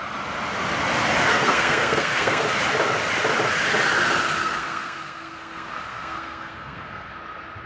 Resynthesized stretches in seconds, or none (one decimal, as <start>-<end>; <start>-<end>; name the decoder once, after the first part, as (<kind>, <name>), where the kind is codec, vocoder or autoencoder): 1.3-2.4 (codec, SNAC); 4.4-7.1

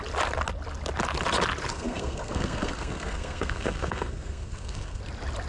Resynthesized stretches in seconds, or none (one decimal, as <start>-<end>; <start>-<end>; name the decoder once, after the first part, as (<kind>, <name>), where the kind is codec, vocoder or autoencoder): 1.7-5.0 (codec, SNAC)

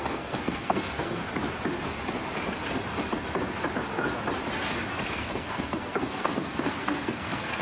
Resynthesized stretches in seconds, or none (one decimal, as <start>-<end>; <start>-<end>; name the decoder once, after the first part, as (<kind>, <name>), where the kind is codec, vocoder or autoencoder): 0.0-1.2 (codec, SNAC); 5.1-7.6

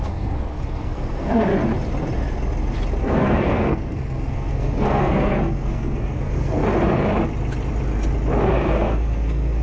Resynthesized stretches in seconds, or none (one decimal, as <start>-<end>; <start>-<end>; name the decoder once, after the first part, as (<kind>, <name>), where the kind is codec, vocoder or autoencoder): 0.0-1.5 (codec, SNAC); 3.0-6.6; 8.5-9.6